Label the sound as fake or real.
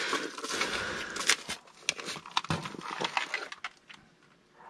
real